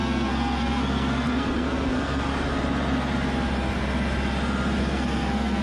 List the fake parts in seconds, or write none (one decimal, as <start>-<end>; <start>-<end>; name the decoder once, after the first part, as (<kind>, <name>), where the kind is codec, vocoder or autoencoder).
0.0-2.3 (codec, SNAC); 4.8-5.6